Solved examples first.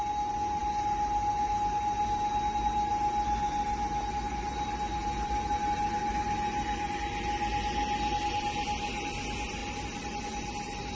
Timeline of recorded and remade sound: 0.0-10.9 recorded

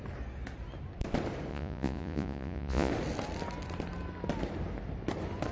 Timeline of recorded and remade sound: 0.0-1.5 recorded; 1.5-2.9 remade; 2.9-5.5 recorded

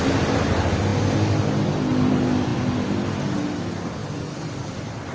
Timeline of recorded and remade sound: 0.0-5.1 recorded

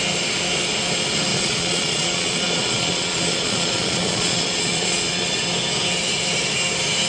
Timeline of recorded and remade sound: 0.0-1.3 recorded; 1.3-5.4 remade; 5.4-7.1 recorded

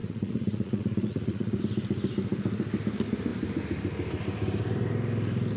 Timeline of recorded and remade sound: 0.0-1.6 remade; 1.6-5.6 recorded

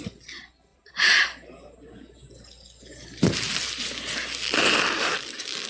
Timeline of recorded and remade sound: 0.0-0.7 recorded; 0.7-1.2 remade; 1.2-5.7 recorded

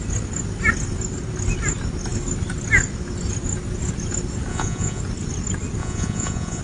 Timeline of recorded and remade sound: 0.0-4.5 recorded; 4.5-5.0 remade; 5.0-5.8 recorded; 5.8-6.6 remade

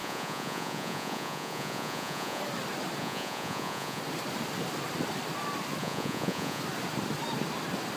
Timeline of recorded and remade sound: 0.0-2.4 remade; 2.4-3.0 recorded; 3.0-4.0 remade; 4.0-5.8 recorded; 5.8-6.6 remade; 6.6-8.0 recorded